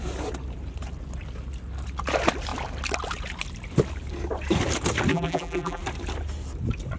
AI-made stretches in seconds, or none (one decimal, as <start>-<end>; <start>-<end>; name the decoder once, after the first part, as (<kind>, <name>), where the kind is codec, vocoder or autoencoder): 5.1-5.8 (vocoder, BigVGAN v2)